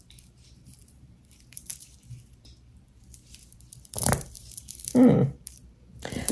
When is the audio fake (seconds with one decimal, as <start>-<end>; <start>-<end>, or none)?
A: 0.0-6.3